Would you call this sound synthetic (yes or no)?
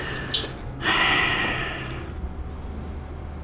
no